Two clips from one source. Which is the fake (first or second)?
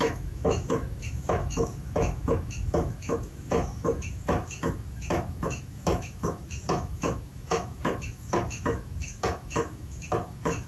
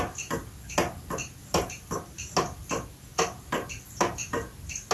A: first